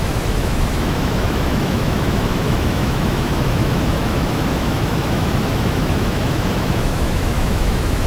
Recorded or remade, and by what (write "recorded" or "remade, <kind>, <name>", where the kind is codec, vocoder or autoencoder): remade, autoencoder, DAC-VAE